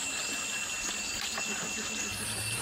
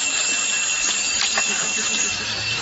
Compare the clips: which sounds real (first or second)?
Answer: first